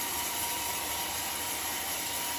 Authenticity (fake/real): fake